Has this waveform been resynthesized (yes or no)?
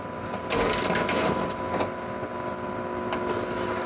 no